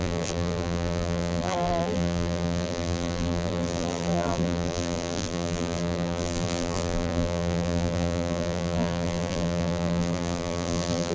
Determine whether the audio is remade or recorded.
remade